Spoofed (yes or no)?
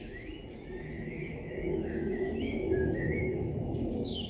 yes